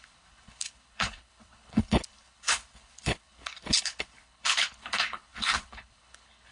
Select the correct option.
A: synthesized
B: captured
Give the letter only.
A